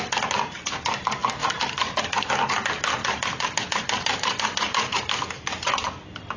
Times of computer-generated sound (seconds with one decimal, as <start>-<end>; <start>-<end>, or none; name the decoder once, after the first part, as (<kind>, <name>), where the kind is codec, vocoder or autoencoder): 1.4-2.3 (vocoder, BigVGAN v2); 3.0-3.6